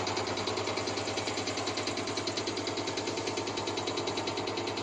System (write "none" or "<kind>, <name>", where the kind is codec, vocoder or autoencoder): none